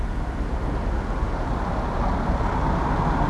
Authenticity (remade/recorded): recorded